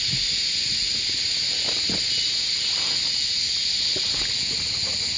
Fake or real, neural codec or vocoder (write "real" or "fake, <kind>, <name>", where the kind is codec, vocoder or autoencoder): real